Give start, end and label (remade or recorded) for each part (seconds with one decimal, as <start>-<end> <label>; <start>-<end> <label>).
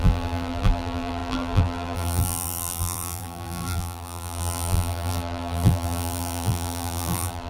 0.0-7.5 remade